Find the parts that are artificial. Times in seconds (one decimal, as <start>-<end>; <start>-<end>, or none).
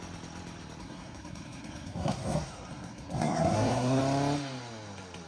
0.8-4.0